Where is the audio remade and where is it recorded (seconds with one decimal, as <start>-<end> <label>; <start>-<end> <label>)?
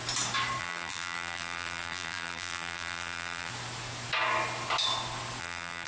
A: 0.0-0.6 recorded; 0.6-3.5 remade; 3.5-5.4 recorded; 5.4-5.9 remade